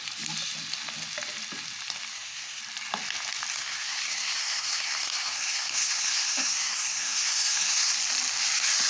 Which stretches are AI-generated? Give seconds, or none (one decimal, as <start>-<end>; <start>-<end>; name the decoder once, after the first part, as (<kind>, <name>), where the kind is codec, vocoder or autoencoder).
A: 2.1-2.6 (codec, SNAC); 3.5-8.0